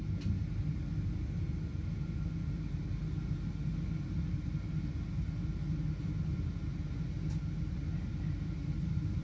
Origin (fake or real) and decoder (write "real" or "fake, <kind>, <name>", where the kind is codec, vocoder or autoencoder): real